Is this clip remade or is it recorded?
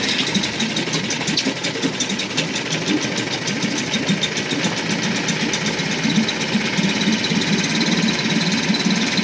recorded